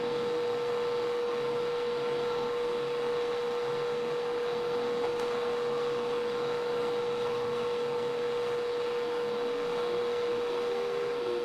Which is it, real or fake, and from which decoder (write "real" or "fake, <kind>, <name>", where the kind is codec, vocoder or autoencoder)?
fake, codec, SNAC